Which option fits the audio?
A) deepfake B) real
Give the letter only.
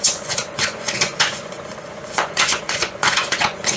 A